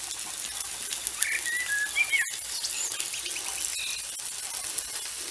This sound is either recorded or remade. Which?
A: recorded